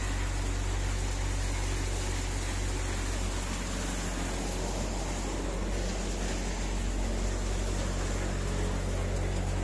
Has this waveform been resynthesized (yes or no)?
no